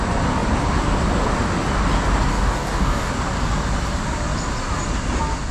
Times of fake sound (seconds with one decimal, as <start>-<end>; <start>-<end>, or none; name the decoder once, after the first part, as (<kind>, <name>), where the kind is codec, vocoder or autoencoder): 2.3-3.1 (codec, DAC)